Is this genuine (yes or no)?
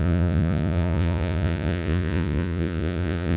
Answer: no